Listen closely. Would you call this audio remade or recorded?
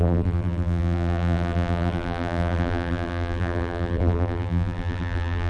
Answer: remade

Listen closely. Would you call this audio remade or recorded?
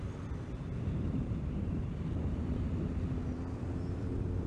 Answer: remade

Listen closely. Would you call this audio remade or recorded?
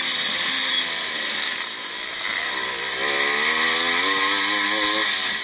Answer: recorded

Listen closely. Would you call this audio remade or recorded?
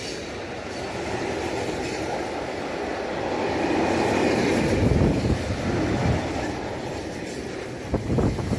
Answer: recorded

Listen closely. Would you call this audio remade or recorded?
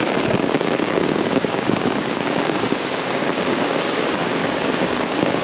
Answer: remade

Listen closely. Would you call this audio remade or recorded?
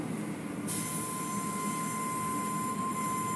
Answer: recorded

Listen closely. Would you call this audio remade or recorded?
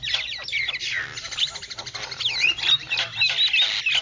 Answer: recorded